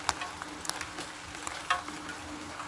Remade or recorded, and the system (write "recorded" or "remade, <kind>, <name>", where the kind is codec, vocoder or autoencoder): recorded